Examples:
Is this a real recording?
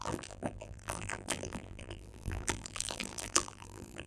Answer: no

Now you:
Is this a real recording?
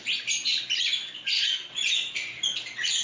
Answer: yes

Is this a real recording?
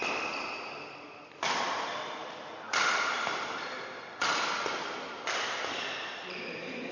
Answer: yes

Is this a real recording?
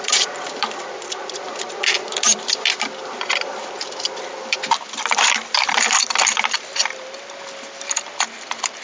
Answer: no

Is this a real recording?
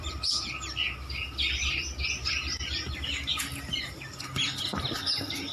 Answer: no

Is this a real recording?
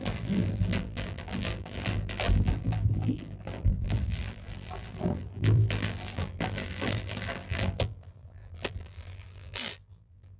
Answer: no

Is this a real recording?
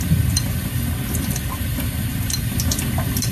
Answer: no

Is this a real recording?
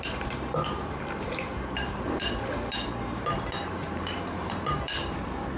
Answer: no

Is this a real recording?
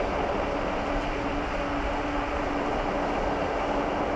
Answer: yes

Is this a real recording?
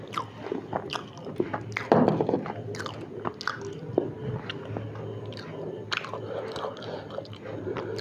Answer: yes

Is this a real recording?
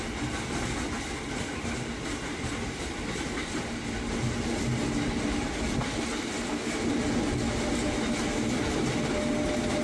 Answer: yes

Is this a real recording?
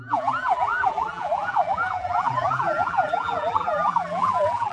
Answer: no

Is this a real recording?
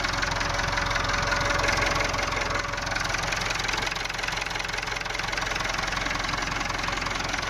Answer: yes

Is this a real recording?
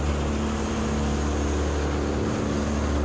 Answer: yes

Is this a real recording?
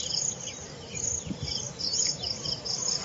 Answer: yes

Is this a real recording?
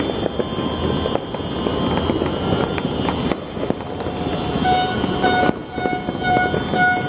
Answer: yes